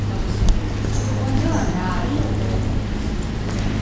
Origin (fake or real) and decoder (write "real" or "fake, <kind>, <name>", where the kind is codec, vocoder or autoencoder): real